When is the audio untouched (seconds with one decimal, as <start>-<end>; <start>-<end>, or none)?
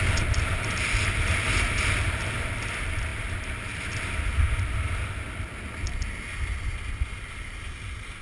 0.0-8.2